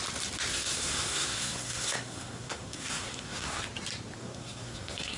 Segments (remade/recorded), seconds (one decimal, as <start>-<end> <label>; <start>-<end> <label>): 0.0-0.5 recorded; 0.5-3.6 remade; 3.6-4.2 recorded; 4.2-5.2 remade